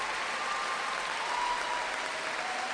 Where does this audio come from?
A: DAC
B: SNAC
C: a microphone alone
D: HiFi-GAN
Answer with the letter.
C